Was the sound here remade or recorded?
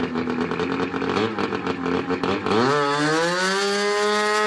recorded